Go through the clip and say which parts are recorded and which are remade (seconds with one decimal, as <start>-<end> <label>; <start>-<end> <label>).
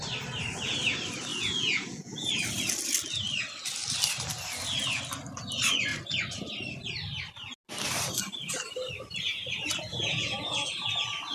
0.0-1.3 recorded; 1.3-2.3 remade; 2.3-9.9 recorded; 9.9-10.7 remade; 10.7-11.3 recorded